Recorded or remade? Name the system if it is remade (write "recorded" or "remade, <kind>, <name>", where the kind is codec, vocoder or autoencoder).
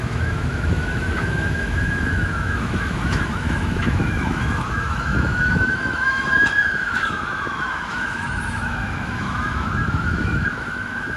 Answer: remade, autoencoder, DAC-VAE